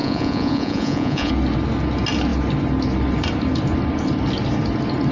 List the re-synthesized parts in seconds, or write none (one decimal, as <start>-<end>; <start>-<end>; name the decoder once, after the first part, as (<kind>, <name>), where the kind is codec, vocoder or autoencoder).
0.0-1.3 (vocoder, Vocos)